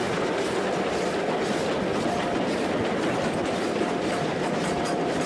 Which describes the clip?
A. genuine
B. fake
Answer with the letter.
A